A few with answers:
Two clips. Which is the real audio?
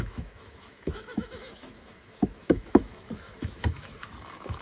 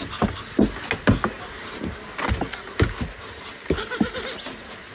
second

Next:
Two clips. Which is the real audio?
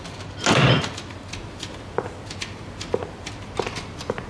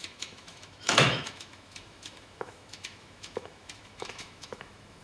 first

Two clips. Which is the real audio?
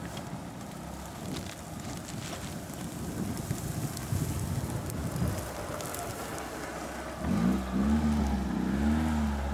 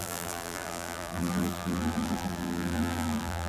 first